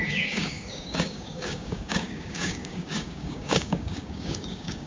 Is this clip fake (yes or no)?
yes